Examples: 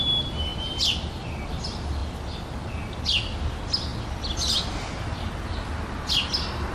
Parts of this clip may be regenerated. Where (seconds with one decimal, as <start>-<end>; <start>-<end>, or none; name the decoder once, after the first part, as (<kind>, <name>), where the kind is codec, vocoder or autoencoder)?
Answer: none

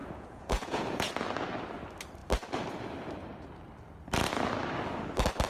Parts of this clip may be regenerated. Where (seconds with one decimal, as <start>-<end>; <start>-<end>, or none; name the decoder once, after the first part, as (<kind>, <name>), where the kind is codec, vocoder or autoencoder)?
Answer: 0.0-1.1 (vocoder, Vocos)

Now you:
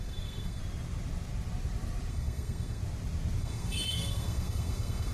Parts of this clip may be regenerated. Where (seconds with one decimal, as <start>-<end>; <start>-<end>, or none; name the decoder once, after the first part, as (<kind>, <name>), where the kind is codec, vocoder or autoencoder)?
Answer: 0.0-0.6 (codec, SNAC); 2.1-2.8; 3.4-5.1

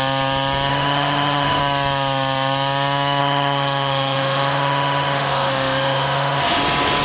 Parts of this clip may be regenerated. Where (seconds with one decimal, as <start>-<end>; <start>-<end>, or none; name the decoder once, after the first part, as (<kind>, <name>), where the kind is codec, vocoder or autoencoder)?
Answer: 0.7-1.6 (autoencoder, DAC-VAE); 3.2-6.6